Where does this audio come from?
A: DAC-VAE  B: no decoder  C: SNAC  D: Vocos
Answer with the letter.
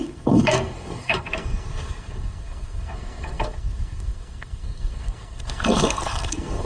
C